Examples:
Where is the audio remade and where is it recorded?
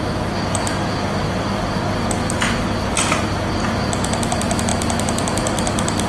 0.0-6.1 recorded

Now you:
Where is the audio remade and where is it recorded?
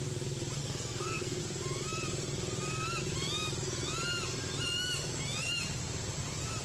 0.0-0.6 recorded; 0.6-1.4 remade; 1.4-6.6 recorded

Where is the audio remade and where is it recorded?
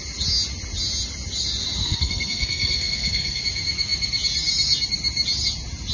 0.0-1.8 recorded; 1.8-3.4 remade; 3.4-5.9 recorded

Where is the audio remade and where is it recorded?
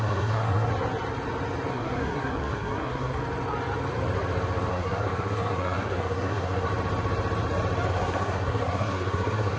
0.0-0.7 remade; 0.7-1.7 recorded; 1.7-3.2 remade; 3.2-4.7 recorded; 4.7-6.7 remade; 6.7-7.9 recorded; 7.9-9.6 remade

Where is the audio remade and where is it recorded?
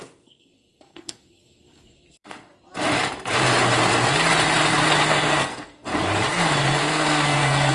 0.0-2.5 remade; 2.5-5.1 recorded; 5.1-5.9 remade; 5.9-6.8 recorded; 6.8-7.7 remade